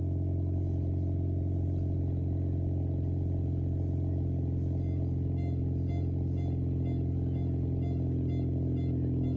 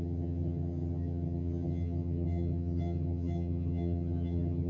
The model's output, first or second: second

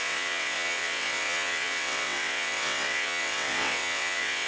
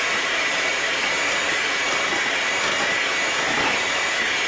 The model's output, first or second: first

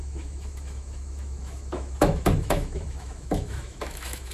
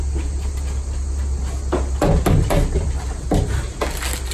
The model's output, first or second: first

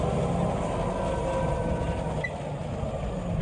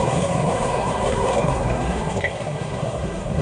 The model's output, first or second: second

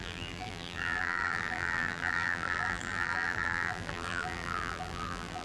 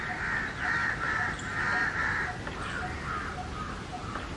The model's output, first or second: first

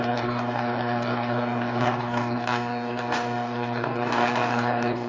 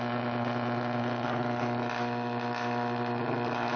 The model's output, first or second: first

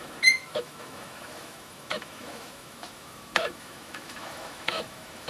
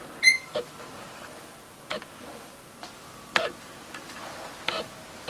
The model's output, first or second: first